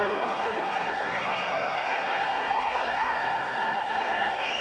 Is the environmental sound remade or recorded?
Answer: remade